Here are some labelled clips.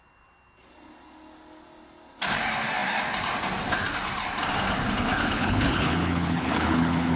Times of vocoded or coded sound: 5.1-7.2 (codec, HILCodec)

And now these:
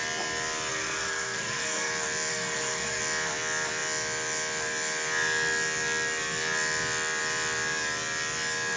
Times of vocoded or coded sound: 0.7-1.9 (codec, SNAC); 2.3-3.0

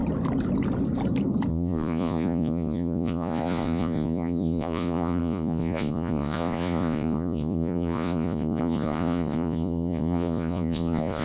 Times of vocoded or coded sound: 1.5-11.2 (vocoder, Vocos)

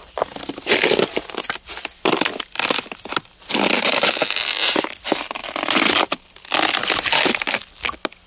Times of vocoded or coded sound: none

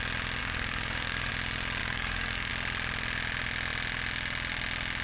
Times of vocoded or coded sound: 0.4-1.3 (codec, DAC); 1.8-2.5

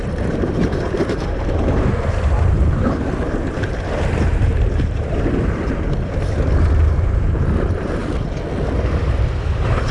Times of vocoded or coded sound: 0.0-8.0 (vocoder, BigVGAN v2); 8.9-9.9